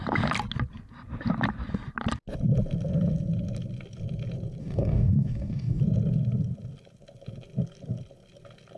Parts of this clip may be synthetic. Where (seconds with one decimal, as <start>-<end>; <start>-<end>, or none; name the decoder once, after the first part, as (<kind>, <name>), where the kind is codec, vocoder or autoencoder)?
4.6-5.8 (codec, DAC)

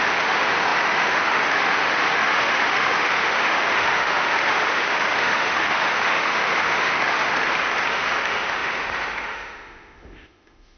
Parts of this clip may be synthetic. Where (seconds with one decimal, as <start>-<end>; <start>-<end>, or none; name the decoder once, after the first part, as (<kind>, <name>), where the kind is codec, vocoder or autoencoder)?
0.0-7.3 (autoencoder, DAC-VAE); 7.9-10.8

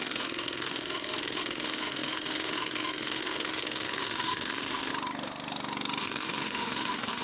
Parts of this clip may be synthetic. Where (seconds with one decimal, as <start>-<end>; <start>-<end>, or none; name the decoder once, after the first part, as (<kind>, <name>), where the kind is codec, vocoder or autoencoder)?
0.0-4.9 (autoencoder, DAC-VAE); 6.0-7.2

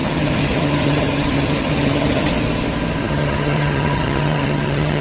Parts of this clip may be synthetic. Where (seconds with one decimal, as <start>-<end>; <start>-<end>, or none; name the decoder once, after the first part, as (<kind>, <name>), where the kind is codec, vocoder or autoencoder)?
0.0-2.3 (vocoder, HiFi-GAN); 3.0-5.0

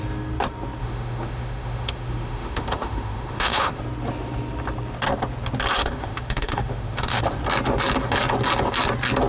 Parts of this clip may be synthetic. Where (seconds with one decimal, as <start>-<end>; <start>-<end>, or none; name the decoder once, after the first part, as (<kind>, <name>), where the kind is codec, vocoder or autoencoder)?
0.8-3.8 (autoencoder, DAC-VAE); 5.8-7.2

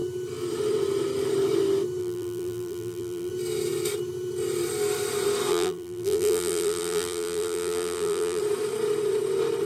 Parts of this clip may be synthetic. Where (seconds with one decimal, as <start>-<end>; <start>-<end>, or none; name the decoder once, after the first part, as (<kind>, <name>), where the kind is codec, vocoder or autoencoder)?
2.0-3.3 (vocoder, BigVGAN v2); 5.5-8.4

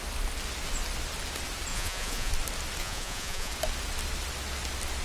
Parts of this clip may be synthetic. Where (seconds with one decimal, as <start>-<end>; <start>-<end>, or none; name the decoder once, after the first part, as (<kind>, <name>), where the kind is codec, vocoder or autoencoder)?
1.7-2.3 (vocoder, Vocos); 2.8-3.5